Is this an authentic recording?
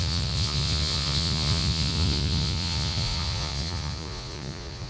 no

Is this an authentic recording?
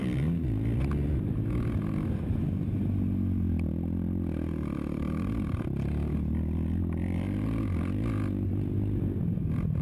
yes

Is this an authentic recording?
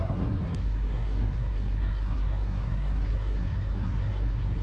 no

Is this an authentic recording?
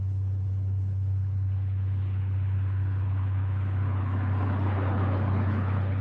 no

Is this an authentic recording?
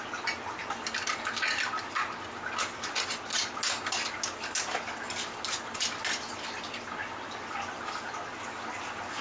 yes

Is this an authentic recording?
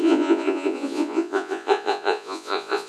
no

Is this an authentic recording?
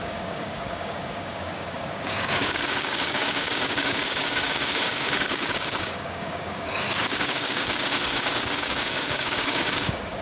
no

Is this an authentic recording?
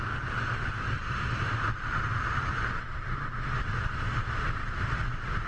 yes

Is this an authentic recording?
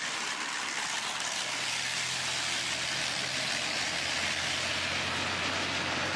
yes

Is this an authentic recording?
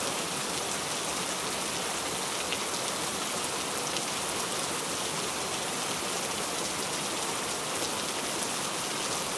yes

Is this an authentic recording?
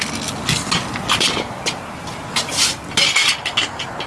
yes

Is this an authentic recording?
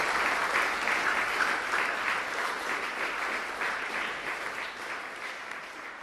yes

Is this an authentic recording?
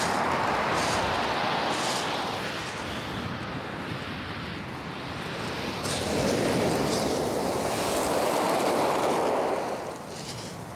yes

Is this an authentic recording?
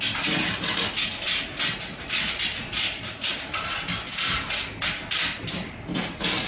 yes